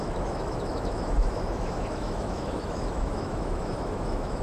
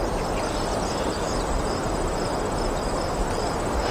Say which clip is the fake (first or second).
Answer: first